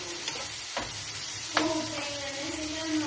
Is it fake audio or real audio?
real